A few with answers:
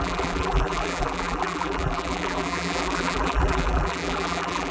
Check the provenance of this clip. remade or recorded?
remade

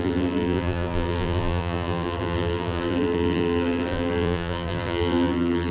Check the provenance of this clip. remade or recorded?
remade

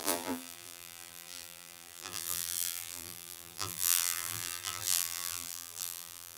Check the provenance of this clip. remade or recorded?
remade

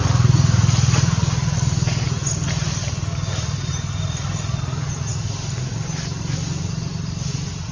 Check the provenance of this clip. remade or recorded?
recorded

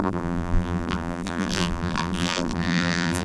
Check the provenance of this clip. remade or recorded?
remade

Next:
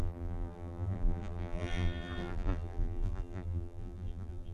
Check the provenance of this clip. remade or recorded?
remade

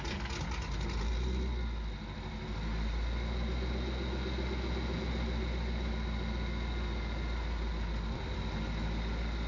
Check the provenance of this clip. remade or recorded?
recorded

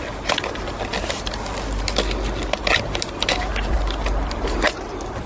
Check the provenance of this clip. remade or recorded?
recorded